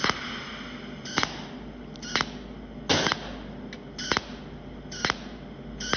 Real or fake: real